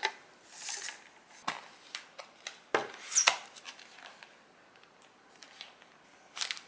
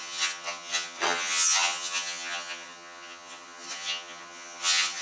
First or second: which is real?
first